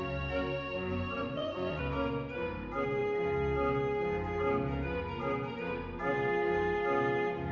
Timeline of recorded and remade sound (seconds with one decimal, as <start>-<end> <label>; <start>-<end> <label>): 0.0-1.2 recorded; 1.2-1.8 remade; 1.8-7.5 recorded